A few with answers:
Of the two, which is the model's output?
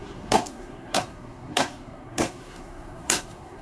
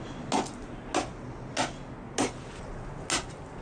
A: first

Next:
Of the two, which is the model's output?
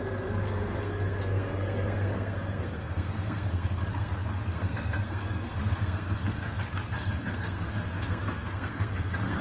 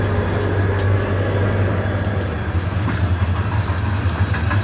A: first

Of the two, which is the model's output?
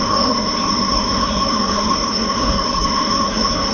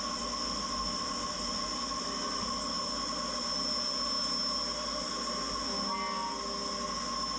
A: first